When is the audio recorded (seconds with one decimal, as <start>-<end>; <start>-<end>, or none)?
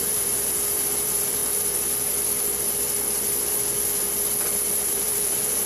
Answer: 1.4-4.8